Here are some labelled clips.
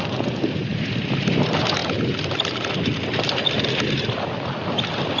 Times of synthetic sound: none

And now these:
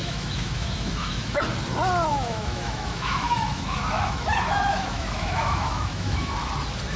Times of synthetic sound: 0.0-1.4 (autoencoder, DAC-VAE); 2.1-6.3

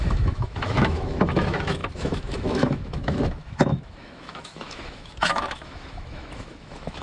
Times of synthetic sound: 0.0-7.0 (autoencoder, DAC-VAE)

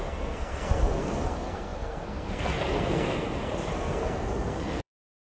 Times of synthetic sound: 0.0-5.2 (codec, SNAC)

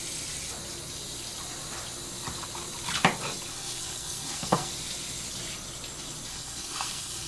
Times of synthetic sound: 3.5-4.7 (codec, SNAC); 6.3-7.3

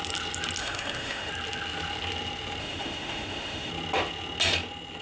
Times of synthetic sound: 0.6-1.3 (autoencoder, DAC-VAE); 2.6-3.7

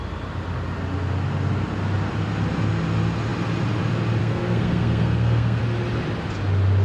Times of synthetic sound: 4.2-5.6 (codec, SNAC)

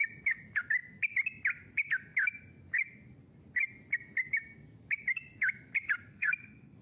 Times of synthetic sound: 6.1-6.8 (codec, SNAC)